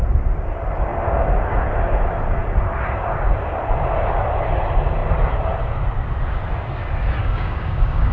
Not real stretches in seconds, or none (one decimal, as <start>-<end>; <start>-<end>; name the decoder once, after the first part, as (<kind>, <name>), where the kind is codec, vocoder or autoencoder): 7.2-8.1 (codec, DAC)